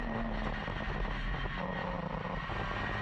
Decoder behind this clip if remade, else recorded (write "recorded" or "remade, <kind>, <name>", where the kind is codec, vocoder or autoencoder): recorded